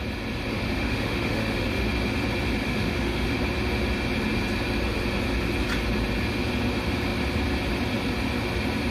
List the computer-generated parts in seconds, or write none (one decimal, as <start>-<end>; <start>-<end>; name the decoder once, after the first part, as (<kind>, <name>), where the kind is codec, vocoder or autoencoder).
0.5-1.9 (autoencoder, DAC-VAE); 2.6-3.3